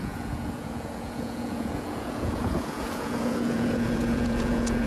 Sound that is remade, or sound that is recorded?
remade